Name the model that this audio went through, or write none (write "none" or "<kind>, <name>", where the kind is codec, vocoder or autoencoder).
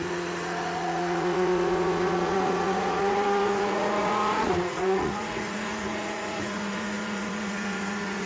vocoder, Vocos